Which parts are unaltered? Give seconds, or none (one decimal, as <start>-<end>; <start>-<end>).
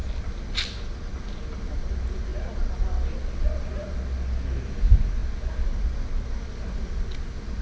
0.0-7.6